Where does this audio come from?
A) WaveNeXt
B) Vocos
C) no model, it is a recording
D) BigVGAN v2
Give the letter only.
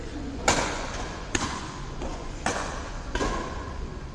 B